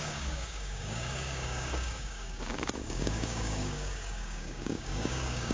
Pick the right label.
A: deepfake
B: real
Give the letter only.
A